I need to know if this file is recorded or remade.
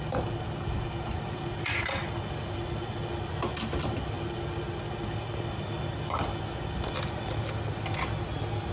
recorded